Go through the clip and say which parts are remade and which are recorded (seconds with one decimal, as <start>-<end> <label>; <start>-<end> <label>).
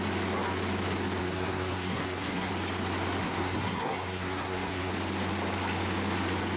0.0-1.2 recorded; 1.2-2.5 remade; 2.5-3.2 recorded; 3.2-4.9 remade; 4.9-6.6 recorded